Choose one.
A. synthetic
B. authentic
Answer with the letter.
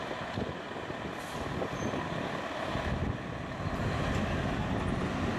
B